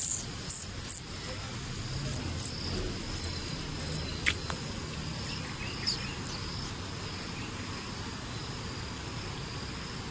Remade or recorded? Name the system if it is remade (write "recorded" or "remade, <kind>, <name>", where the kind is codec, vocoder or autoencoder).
recorded